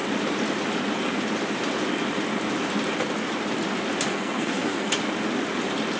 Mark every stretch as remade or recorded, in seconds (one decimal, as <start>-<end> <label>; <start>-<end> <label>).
0.0-4.1 recorded; 4.1-4.9 remade; 4.9-6.0 recorded